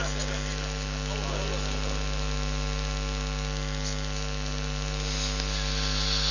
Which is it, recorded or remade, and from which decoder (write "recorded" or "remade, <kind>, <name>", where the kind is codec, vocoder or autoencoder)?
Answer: recorded